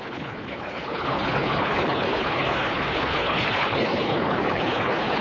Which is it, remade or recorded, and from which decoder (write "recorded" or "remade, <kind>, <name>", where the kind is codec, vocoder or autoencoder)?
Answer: remade, codec, HILCodec